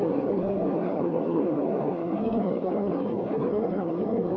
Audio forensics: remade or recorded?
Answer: remade